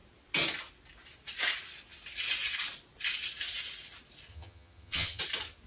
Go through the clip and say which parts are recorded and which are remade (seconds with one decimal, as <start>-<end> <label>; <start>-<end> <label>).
0.0-4.3 recorded; 4.3-5.2 remade; 5.2-5.7 recorded